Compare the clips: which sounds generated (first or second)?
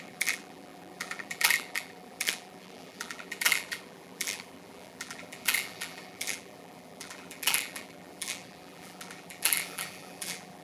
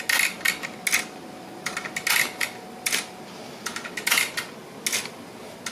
first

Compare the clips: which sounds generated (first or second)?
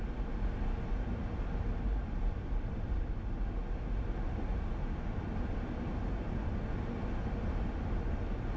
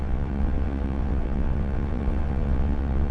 second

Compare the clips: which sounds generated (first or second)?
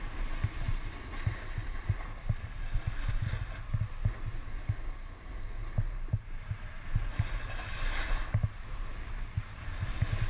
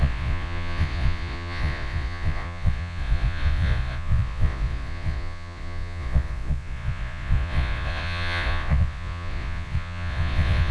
second